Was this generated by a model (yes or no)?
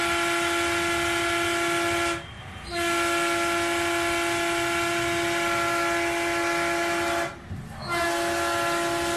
no